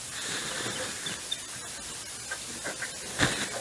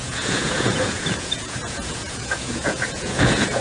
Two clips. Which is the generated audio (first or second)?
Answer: second